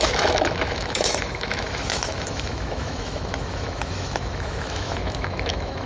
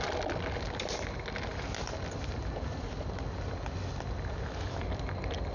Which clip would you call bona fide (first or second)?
second